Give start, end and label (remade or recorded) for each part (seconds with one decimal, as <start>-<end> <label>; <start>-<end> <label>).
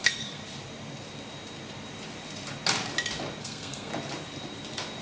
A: 0.0-0.4 remade; 0.4-3.4 recorded; 3.4-3.9 remade; 3.9-5.0 recorded